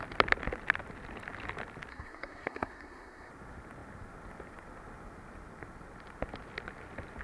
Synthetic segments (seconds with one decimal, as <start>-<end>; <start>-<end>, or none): 1.9-3.3